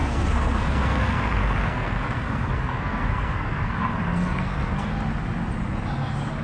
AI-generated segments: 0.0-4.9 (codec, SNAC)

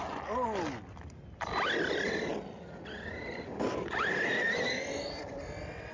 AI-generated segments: none